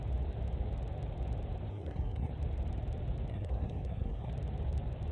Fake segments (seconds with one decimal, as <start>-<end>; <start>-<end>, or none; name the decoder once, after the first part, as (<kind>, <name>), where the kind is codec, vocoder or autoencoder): 1.7-2.3 (codec, SNAC); 3.3-4.3